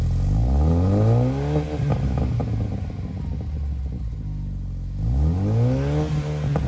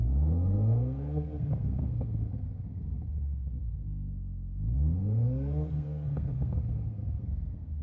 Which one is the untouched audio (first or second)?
first